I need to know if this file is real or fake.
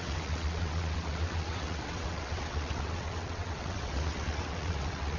fake